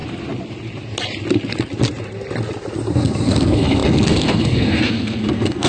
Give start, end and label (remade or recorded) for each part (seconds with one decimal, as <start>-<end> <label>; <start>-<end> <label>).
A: 0.0-2.9 recorded; 2.9-5.7 remade